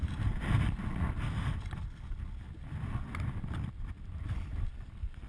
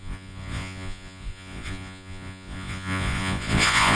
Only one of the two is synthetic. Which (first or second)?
second